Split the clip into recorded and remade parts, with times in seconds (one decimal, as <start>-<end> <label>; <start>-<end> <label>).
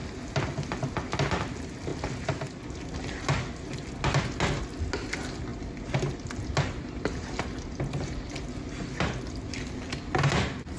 0.0-10.8 recorded